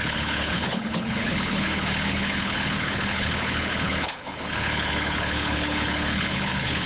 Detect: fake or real fake